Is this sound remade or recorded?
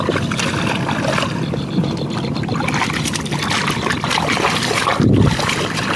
recorded